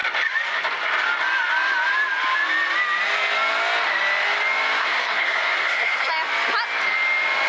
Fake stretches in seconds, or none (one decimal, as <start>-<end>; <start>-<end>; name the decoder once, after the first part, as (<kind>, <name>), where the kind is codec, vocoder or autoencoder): 4.8-6.1 (codec, SNAC)